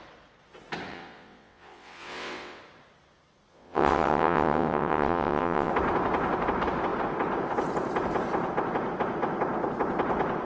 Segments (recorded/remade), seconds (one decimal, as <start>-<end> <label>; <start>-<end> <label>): 0.0-0.9 recorded; 0.9-2.6 remade; 2.6-3.5 recorded; 3.5-5.7 remade; 5.7-10.4 recorded